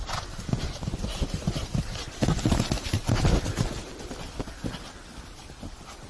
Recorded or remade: recorded